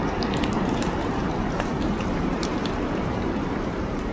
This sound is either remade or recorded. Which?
remade